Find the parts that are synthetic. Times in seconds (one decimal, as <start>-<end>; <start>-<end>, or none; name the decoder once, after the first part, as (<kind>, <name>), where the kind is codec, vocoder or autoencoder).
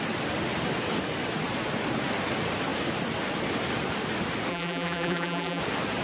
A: 4.5-5.6 (vocoder, BigVGAN v2)